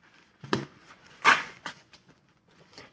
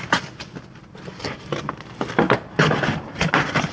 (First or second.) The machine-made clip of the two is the first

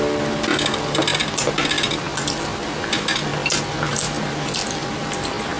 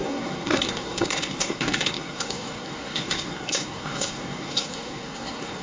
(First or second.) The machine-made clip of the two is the second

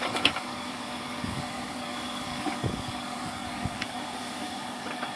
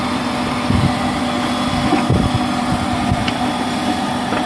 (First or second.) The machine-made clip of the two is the first